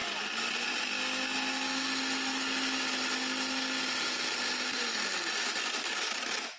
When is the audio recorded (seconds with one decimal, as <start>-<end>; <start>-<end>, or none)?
0.0-6.6